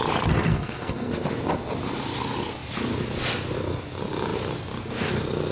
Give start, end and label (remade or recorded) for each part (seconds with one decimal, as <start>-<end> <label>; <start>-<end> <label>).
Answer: 0.0-0.4 recorded; 0.4-1.1 remade; 1.1-5.5 recorded